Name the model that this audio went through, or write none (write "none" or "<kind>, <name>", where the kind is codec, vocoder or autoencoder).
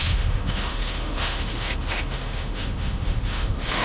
autoencoder, DAC-VAE